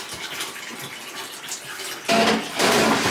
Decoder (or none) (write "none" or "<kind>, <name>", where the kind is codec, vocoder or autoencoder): none